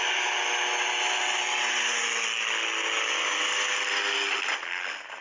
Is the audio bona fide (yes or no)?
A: yes